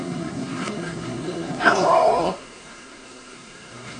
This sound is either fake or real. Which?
fake